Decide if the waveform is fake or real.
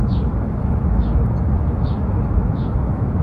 fake